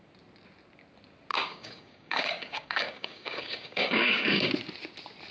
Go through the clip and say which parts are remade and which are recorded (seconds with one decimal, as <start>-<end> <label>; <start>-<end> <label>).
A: 0.0-1.3 recorded; 1.3-4.5 remade; 4.5-5.3 recorded